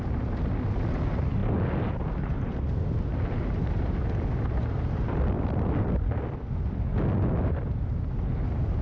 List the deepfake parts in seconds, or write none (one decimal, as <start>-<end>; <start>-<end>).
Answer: none